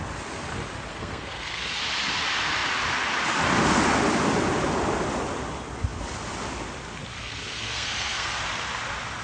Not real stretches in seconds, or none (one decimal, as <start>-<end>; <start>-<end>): 0.9-1.8; 7.1-8.4